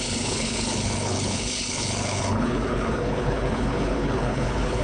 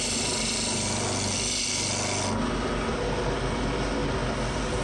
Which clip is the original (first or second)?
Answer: second